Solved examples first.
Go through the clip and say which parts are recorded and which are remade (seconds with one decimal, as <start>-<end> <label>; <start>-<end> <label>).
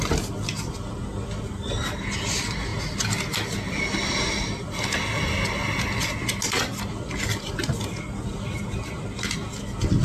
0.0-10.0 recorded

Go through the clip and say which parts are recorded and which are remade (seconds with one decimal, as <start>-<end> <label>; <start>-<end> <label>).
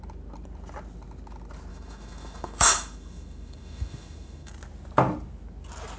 0.0-1.7 recorded; 1.7-4.5 remade; 4.5-6.0 recorded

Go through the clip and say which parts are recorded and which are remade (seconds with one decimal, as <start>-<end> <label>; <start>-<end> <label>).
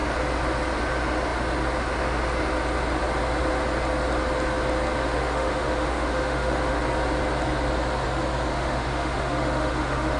0.0-5.0 recorded; 5.0-6.8 remade; 6.8-8.5 recorded; 8.5-10.2 remade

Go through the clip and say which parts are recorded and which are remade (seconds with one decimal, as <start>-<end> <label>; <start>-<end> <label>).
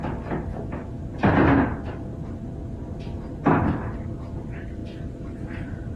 0.0-0.5 recorded; 0.5-1.0 remade; 1.0-6.0 recorded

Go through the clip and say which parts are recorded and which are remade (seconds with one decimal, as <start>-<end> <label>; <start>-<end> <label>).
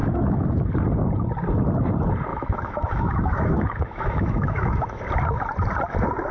0.0-0.7 remade; 0.7-2.3 recorded; 2.3-5.0 remade; 5.0-6.3 recorded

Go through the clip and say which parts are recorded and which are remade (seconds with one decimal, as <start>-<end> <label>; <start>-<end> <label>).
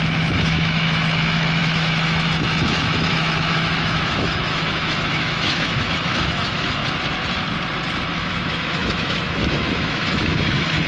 0.0-6.8 remade; 6.8-8.1 recorded; 8.1-10.9 remade